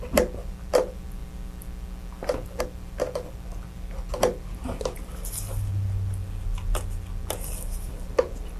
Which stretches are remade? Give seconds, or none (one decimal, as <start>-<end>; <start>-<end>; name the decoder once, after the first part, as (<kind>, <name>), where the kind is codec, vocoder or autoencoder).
none